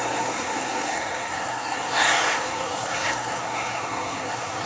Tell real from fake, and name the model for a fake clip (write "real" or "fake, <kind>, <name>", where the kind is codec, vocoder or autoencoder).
fake, codec, SNAC